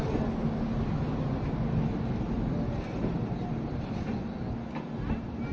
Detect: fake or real real